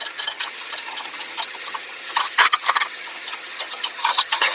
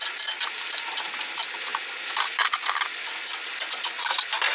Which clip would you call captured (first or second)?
second